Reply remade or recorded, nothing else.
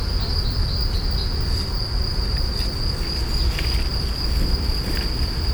recorded